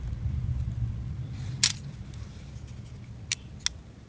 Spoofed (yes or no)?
no